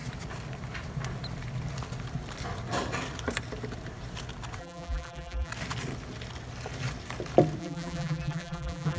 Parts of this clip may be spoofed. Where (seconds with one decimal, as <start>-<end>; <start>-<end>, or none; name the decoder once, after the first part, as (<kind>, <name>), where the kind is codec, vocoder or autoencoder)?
4.6-5.5 (vocoder, BigVGAN v2); 7.6-9.0